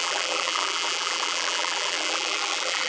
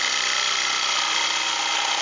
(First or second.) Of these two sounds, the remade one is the first